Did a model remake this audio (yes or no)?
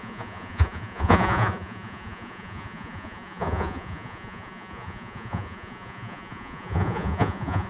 yes